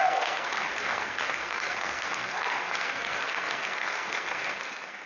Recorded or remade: remade